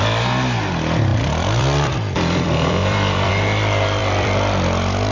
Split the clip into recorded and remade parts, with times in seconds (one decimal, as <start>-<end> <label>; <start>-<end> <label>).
0.0-1.1 recorded; 1.1-3.3 remade; 3.3-4.0 recorded; 4.0-5.1 remade